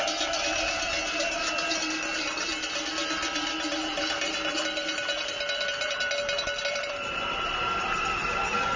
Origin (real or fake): real